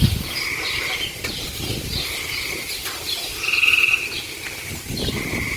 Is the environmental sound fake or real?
fake